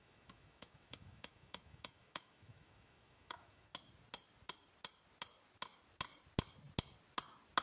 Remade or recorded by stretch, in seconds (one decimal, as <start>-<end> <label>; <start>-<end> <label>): 0.0-3.7 remade; 3.7-7.6 recorded